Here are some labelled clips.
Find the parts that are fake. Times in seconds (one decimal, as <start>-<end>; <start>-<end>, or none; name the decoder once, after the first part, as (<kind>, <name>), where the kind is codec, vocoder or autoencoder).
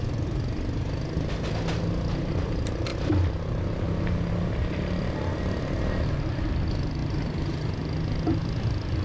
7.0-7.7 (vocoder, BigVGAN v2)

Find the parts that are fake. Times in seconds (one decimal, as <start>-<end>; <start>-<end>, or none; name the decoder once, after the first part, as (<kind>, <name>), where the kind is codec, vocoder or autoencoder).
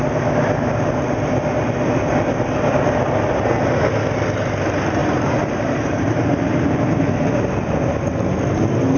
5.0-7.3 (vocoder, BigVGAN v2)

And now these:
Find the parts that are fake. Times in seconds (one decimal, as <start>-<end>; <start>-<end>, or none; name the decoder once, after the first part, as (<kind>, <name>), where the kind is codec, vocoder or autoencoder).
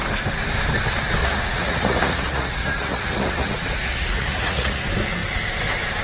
1.2-4.8 (vocoder, Vocos)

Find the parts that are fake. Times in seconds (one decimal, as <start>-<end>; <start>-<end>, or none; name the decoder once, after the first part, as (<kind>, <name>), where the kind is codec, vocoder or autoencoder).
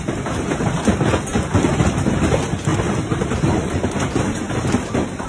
2.7-5.3 (vocoder, BigVGAN v2)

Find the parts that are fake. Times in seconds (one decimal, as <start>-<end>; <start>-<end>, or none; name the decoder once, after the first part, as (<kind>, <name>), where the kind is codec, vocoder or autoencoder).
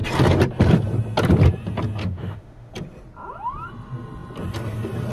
2.0-2.7 (autoencoder, DAC-VAE)